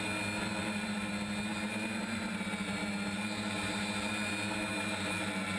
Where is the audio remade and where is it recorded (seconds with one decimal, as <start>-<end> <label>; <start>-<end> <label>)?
0.0-0.6 recorded; 0.6-1.1 remade; 1.1-1.5 recorded; 1.5-4.3 remade; 4.3-4.7 recorded; 4.7-5.6 remade

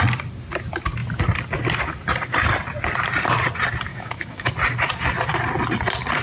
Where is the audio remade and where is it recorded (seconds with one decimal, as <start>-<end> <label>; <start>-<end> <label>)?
0.0-3.9 recorded; 3.9-4.5 remade; 4.5-6.2 recorded